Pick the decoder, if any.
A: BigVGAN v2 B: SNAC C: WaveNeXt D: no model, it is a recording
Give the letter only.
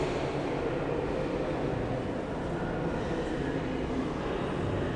D